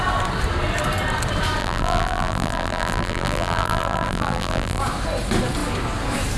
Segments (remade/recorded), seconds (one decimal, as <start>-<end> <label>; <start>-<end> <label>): 0.0-1.6 recorded; 1.6-4.8 remade; 4.8-6.4 recorded